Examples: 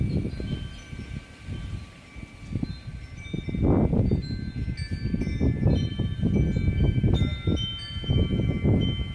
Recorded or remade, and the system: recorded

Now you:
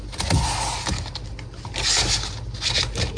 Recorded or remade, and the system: recorded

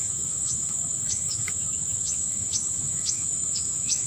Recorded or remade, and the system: remade, autoencoder, DAC-VAE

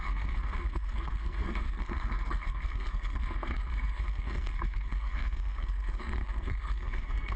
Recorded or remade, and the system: remade, codec, SNAC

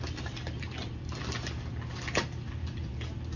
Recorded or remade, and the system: recorded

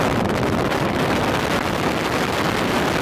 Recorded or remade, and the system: recorded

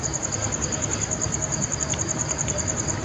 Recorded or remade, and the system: remade, vocoder, BigVGAN v2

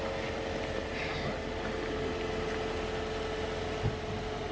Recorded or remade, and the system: recorded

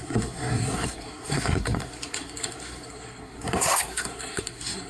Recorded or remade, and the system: remade, codec, SNAC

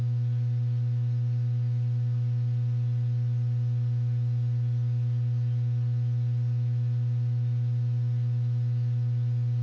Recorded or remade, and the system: recorded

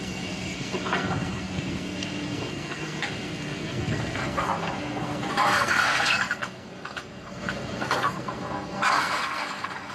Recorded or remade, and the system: remade, codec, SNAC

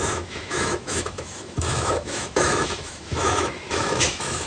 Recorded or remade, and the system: remade, autoencoder, DAC-VAE